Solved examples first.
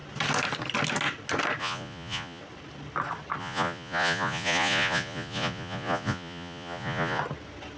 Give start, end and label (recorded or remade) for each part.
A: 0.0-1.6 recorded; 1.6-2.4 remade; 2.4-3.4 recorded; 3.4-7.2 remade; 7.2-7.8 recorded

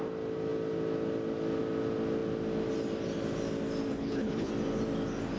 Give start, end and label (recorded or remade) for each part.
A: 0.0-3.9 recorded; 3.9-4.5 remade; 4.5-5.4 recorded